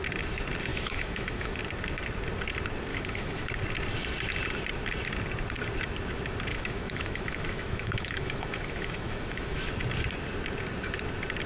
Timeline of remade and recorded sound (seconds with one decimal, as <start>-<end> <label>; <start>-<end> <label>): 0.0-0.7 recorded; 0.7-1.6 remade; 1.6-2.9 recorded; 2.9-3.5 remade; 3.5-6.5 recorded; 6.5-9.7 remade; 9.7-11.5 recorded